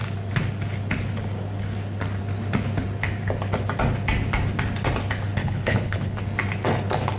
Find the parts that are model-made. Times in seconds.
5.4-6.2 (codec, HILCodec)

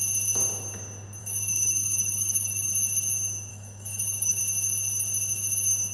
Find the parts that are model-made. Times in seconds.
1.2-2.7 (autoencoder, DAC-VAE); 3.5-4.4

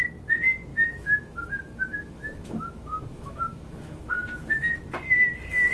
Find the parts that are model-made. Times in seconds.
0.7-4.1 (autoencoder, DAC-VAE)

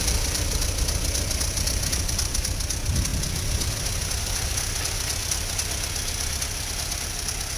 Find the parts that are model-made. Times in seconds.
none

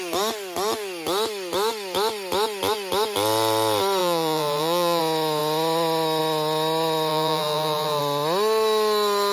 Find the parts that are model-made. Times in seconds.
4.0-5.0 (vocoder, BigVGAN v2); 7.1-8.0

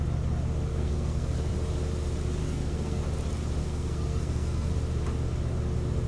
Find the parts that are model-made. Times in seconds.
0.7-1.5 (codec, SNAC); 2.4-3.0; 3.6-4.7

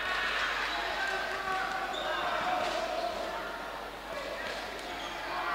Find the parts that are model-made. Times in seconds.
1.9-2.8 (vocoder, BigVGAN v2)